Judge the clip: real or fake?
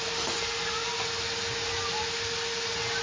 real